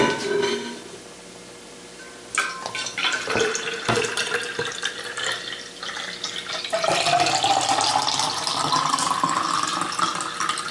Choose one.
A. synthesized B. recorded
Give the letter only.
B